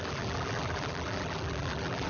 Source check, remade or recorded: remade